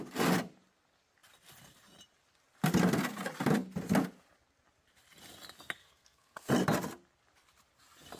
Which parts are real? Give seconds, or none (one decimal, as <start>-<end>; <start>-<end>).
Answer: 0.0-5.8; 6.5-8.2